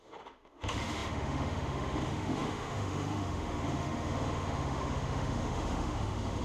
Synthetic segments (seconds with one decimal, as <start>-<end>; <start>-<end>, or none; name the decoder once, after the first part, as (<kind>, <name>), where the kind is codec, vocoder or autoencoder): 0.0-6.4 (autoencoder, DAC-VAE)